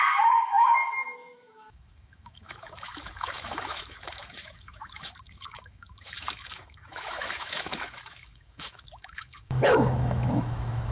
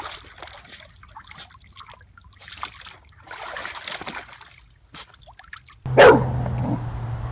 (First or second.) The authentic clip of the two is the second